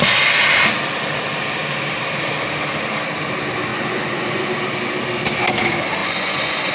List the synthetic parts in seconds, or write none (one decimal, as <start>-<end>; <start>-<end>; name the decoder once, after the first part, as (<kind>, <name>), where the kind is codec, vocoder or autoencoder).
3.7-4.5 (vocoder, Vocos); 6.0-6.7